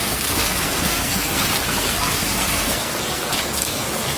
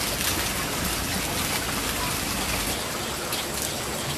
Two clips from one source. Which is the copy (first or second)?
first